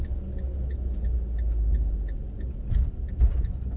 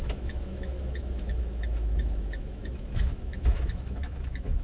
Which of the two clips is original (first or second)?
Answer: first